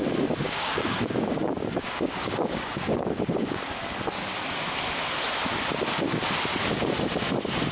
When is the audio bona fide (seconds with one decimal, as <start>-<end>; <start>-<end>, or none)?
0.0-0.4; 3.6-7.7